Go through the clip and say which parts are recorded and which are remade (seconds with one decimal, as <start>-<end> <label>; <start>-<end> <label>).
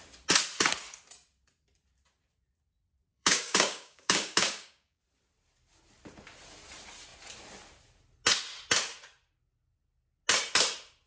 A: 0.0-3.1 recorded; 3.1-5.0 remade; 5.0-11.1 recorded